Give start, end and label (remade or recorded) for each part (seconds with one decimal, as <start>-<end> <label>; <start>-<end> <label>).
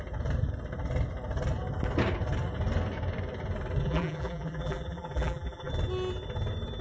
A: 0.0-3.8 recorded; 3.8-5.7 remade; 5.7-6.8 recorded